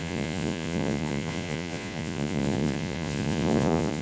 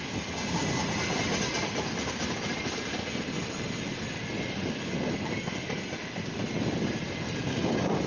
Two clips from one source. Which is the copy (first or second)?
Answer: first